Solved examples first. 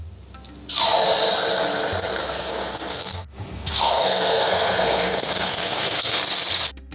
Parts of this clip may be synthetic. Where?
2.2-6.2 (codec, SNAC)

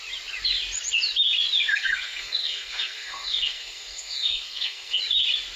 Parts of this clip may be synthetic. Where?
1.7-5.0 (codec, SNAC)

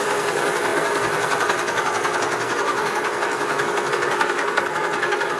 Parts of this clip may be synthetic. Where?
0.0-5.4 (codec, SNAC)